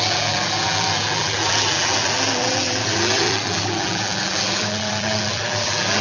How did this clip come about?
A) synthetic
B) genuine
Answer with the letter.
A